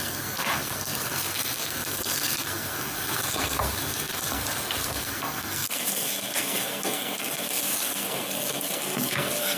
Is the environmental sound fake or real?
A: fake